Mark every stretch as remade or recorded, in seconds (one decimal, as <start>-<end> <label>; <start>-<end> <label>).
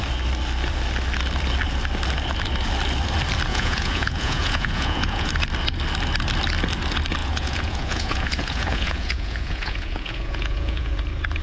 0.0-3.5 recorded; 3.5-5.3 remade; 5.3-7.2 recorded; 7.2-11.0 remade; 11.0-11.4 recorded